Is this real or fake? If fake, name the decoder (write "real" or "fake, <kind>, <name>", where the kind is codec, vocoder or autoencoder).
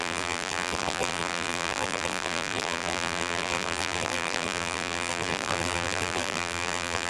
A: fake, vocoder, BigVGAN v2